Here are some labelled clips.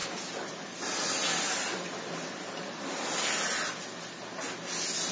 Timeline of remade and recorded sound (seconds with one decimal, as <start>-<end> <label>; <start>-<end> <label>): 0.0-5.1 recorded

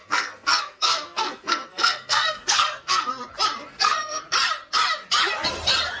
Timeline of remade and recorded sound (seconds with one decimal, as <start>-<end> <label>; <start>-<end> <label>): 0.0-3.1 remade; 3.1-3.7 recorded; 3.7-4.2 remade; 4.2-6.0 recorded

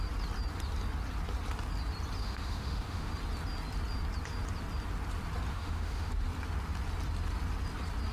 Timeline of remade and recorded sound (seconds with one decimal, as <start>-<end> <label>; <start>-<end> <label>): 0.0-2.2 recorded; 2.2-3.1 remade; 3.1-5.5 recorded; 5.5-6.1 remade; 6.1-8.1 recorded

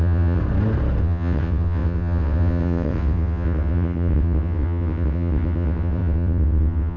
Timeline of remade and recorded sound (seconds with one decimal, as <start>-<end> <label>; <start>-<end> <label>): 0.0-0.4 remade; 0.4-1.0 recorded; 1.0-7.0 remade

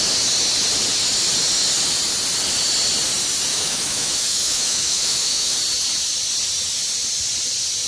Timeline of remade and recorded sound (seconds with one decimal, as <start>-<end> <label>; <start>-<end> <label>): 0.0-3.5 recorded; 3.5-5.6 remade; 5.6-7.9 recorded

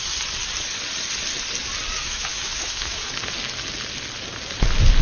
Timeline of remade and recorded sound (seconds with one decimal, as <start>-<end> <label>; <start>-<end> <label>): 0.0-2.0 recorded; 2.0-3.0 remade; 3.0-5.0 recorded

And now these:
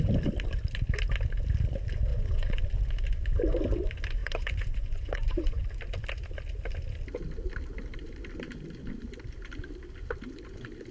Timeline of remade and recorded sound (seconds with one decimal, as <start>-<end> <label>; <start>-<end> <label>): 0.0-2.1 recorded; 2.1-2.6 remade; 2.6-4.2 recorded; 4.2-5.6 remade; 5.6-10.9 recorded

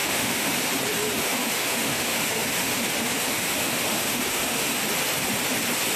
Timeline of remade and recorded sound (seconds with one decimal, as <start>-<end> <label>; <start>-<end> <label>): 0.0-0.5 remade; 0.5-1.2 recorded; 1.2-4.8 remade; 4.8-6.0 recorded